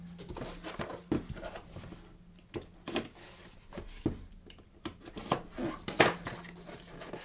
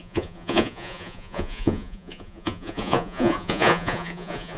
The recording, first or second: first